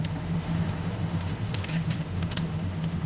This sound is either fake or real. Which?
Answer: fake